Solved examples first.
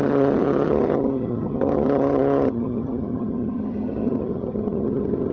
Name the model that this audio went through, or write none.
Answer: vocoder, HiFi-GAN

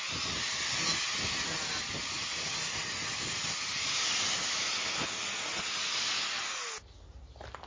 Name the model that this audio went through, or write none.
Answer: none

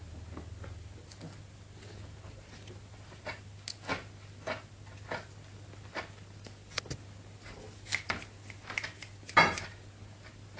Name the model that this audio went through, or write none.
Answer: none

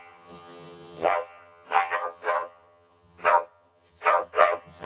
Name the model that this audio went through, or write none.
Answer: vocoder, HiFi-GAN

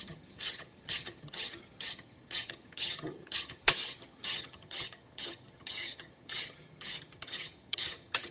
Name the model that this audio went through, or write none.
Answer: vocoder, HiFi-GAN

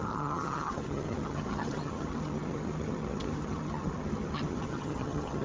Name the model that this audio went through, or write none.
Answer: vocoder, HiFi-GAN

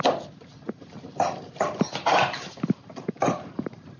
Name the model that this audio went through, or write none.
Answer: none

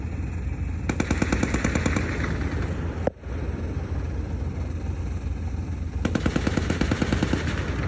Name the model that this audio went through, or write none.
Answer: none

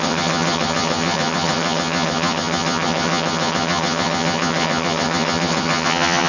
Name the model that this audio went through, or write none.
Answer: vocoder, HiFi-GAN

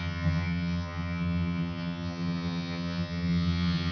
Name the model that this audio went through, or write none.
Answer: vocoder, HiFi-GAN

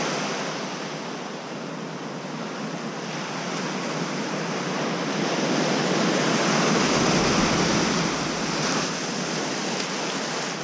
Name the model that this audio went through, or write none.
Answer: none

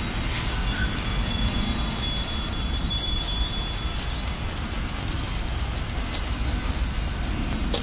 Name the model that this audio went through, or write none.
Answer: none